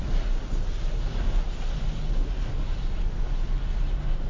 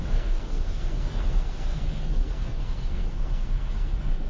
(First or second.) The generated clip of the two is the second